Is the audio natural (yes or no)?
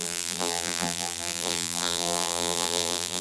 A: no